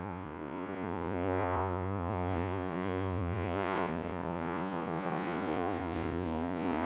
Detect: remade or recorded remade